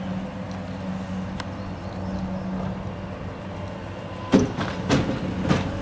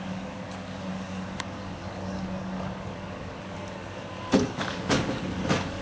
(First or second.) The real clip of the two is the first